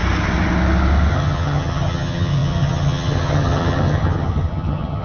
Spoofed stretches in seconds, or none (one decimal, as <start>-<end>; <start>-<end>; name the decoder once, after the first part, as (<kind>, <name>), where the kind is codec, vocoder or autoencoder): 1.1-5.0 (vocoder, HiFi-GAN)

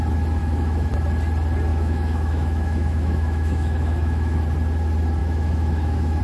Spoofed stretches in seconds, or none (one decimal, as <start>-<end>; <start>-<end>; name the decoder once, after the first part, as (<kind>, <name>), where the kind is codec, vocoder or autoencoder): 0.4-0.9 (autoencoder, DAC-VAE); 1.7-4.4; 5.2-6.2

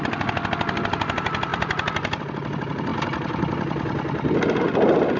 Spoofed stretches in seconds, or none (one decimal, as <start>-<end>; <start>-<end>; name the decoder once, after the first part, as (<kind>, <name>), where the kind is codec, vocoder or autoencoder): none

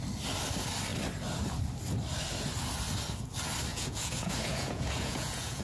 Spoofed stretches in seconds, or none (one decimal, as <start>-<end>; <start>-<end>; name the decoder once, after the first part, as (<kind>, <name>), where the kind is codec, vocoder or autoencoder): 3.7-5.6 (vocoder, Vocos)

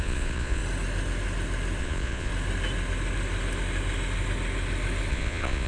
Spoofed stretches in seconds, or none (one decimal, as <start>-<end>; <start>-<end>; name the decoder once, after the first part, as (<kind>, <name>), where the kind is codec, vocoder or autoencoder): 0.0-0.6 (vocoder, Vocos); 1.8-2.3; 5.1-5.7